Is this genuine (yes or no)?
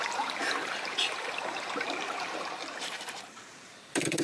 no